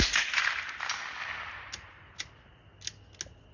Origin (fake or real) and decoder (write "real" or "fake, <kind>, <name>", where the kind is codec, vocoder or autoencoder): real